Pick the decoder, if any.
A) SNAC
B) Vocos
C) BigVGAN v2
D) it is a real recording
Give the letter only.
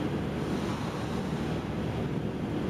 D